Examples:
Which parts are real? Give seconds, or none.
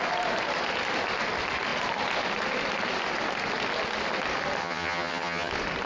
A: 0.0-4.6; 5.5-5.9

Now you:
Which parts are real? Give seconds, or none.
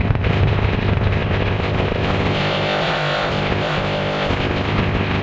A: none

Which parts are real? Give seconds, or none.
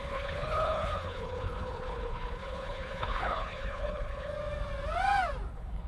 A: 4.3-5.5